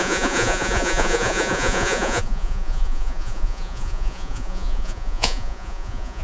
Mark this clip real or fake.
fake